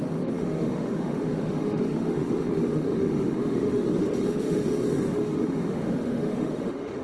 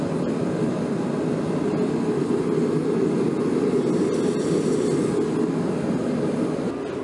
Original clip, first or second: second